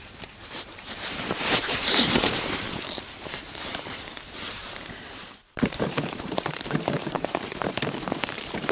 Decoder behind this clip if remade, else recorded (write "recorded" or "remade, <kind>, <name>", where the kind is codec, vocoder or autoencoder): remade, vocoder, BigVGAN v2